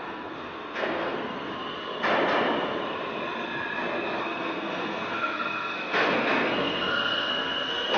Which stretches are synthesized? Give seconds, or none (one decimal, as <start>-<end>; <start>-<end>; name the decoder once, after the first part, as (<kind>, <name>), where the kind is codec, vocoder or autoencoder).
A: 0.0-1.5 (codec, SNAC); 4.2-8.0